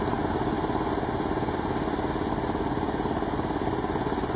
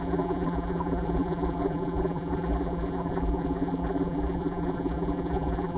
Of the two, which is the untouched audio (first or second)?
first